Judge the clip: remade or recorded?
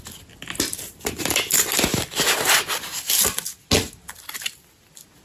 recorded